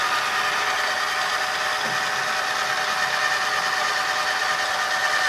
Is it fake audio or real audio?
real